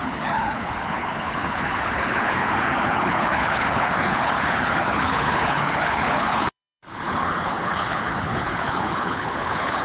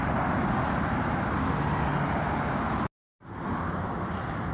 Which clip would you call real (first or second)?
second